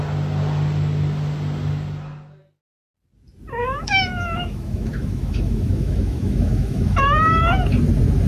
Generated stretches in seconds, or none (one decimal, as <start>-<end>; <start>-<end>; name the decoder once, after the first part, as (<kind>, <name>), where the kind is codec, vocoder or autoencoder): 3.6-7.4 (autoencoder, DAC-VAE)